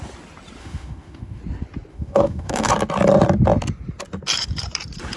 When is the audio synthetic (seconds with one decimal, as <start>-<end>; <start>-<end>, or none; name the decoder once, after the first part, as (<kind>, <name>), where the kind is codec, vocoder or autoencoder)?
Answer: 0.6-1.4 (autoencoder, DAC-VAE); 1.9-2.7